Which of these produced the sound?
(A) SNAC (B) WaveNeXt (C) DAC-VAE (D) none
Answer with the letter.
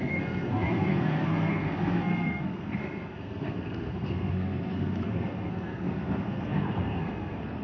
A